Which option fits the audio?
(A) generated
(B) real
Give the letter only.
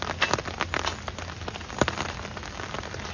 B